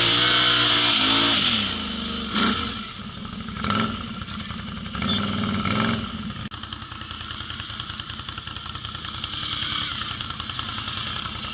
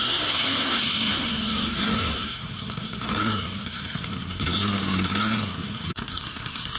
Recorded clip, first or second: first